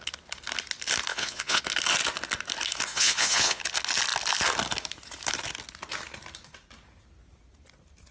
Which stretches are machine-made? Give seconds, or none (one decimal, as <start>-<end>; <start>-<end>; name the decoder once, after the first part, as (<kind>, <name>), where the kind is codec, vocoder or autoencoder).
1.1-1.6 (vocoder, Vocos); 2.9-3.6